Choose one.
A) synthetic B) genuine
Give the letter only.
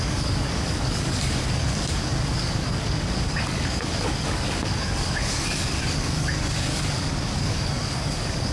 A